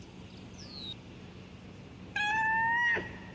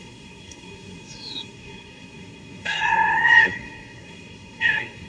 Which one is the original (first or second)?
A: first